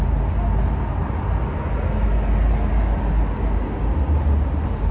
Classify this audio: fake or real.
real